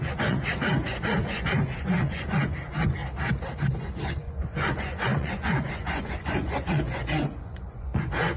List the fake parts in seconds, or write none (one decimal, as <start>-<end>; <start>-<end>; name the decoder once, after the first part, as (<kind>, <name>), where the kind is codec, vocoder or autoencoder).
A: 0.0-3.0 (vocoder, Vocos); 3.7-8.4